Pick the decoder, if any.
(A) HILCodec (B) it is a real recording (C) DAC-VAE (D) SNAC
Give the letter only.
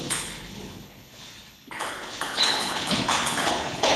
A